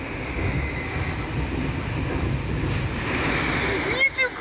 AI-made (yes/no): no